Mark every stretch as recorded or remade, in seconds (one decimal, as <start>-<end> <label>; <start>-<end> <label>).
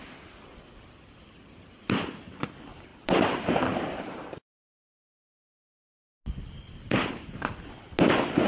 0.0-2.9 recorded; 2.9-6.2 remade; 6.2-8.5 recorded